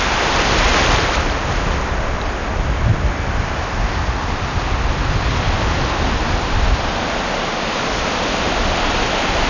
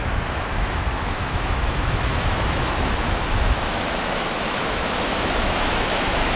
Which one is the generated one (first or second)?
second